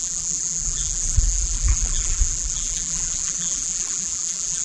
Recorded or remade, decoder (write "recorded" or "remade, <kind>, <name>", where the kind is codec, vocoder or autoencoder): remade, vocoder, BigVGAN v2